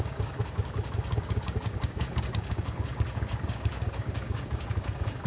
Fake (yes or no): yes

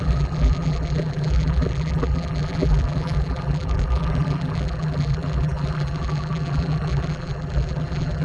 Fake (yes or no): yes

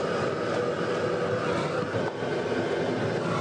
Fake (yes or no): no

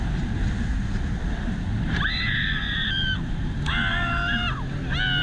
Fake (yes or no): no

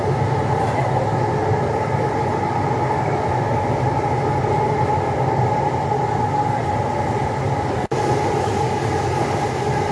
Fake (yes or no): no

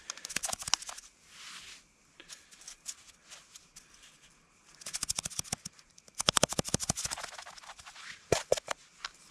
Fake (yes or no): no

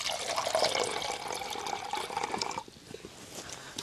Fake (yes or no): no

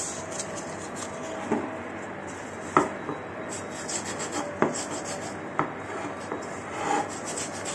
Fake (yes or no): no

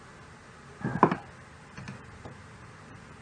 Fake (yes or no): no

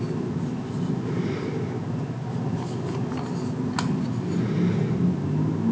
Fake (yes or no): no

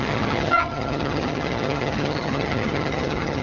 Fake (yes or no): yes